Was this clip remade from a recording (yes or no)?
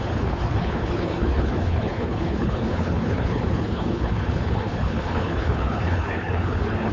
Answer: yes